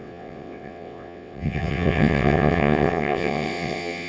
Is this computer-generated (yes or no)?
yes